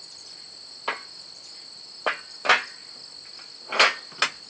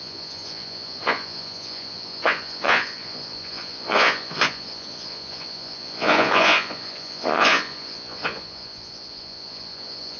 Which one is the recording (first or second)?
first